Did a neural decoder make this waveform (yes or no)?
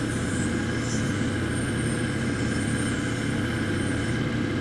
no